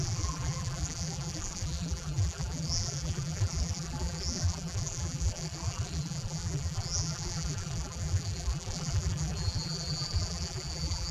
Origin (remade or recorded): remade